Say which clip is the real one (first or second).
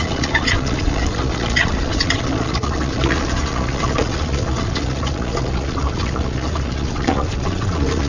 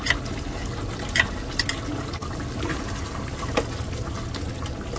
second